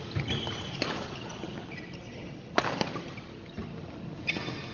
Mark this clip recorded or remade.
recorded